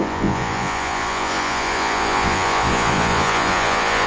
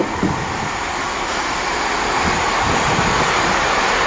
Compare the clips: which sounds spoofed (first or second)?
first